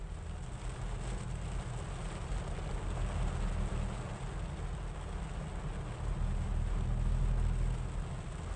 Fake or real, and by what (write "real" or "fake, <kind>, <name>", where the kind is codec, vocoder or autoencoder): real